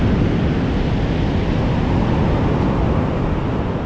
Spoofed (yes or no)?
no